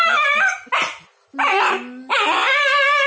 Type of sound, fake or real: real